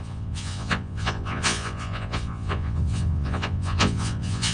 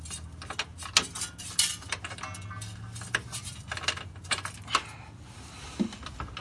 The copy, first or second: first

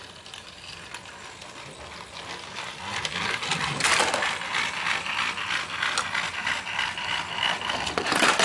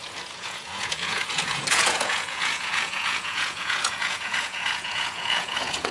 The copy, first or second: second